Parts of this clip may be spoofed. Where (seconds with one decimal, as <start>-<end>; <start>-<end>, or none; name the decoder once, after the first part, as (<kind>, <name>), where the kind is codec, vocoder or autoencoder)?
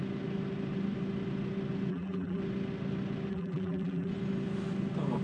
1.9-2.4 (vocoder, BigVGAN v2); 3.3-4.1